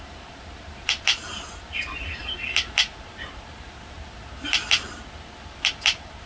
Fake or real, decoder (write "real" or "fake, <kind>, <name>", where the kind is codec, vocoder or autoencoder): real